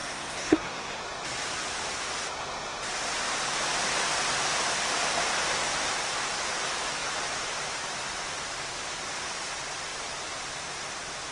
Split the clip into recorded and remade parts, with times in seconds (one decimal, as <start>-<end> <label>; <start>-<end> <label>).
0.0-1.0 remade; 1.0-11.3 recorded